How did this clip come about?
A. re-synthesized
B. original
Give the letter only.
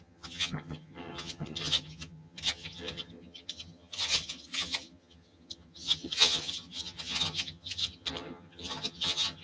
A